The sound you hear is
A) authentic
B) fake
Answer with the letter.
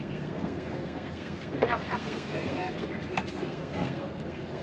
B